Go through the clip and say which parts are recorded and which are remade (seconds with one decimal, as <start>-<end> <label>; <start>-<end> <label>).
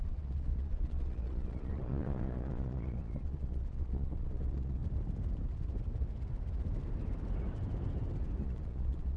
0.0-4.8 remade; 4.8-8.4 recorded; 8.4-9.2 remade